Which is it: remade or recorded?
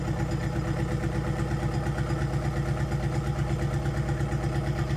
recorded